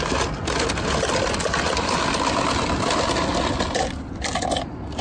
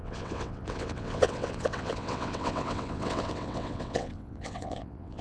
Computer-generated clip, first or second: second